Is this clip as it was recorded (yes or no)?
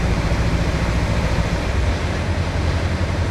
no